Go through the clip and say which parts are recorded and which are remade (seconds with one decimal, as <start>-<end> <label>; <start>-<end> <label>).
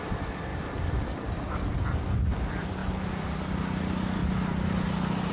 0.0-0.5 recorded; 0.5-2.4 remade; 2.4-5.3 recorded